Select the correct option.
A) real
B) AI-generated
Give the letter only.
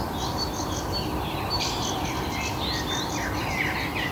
A